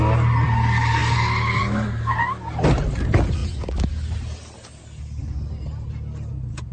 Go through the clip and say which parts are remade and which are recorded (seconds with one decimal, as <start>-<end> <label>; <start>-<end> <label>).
0.0-6.7 recorded